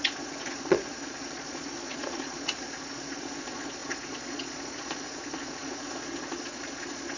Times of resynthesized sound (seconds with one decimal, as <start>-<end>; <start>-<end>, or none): 0.0-7.2